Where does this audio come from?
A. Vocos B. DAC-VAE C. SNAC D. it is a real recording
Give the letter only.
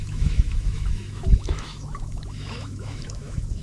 B